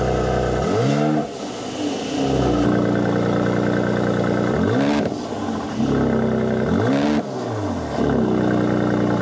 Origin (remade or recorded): recorded